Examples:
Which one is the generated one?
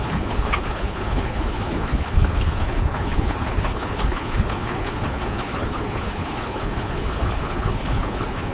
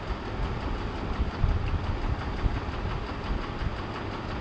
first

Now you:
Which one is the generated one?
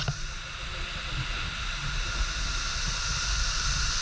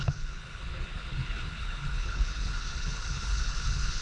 second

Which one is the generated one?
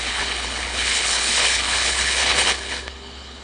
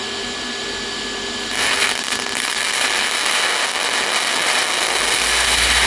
first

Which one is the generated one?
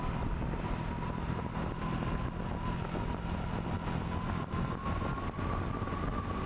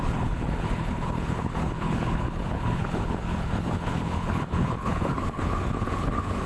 second